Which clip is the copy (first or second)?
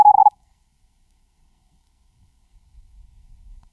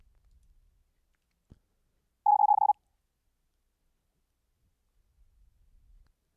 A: first